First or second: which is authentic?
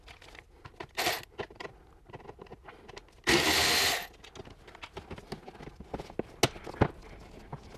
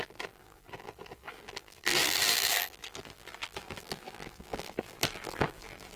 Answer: first